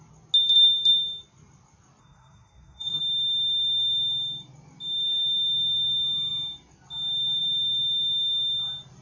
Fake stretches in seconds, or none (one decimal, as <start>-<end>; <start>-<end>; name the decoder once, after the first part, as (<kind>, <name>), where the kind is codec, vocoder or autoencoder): 2.0-3.0 (codec, SNAC)